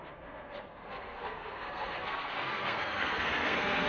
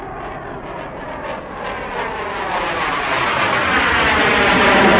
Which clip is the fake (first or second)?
first